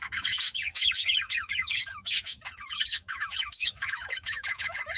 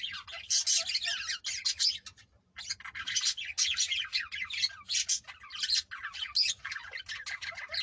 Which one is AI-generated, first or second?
first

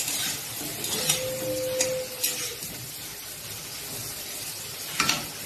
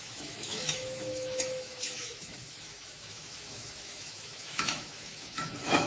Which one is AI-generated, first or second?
second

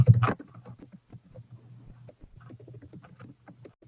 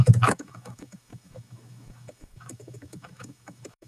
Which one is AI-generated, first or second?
second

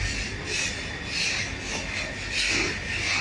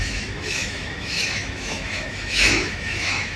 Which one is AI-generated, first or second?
second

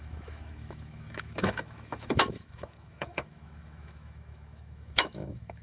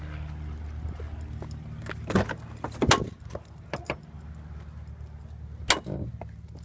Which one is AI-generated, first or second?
first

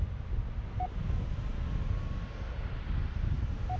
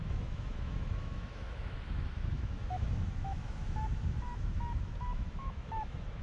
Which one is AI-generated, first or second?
second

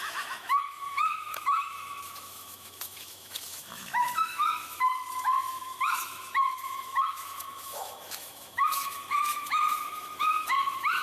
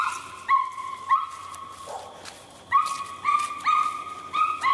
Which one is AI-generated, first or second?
first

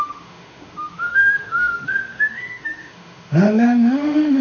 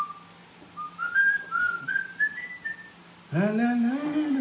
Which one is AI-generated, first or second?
first